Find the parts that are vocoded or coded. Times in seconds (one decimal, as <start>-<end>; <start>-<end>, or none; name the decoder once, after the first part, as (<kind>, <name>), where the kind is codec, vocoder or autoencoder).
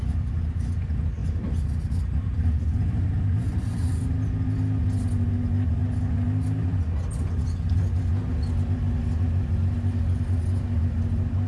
1.2-4.1 (vocoder, BigVGAN v2)